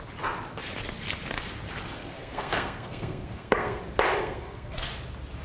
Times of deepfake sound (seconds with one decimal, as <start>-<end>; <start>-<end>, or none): 2.0-3.8; 4.2-4.9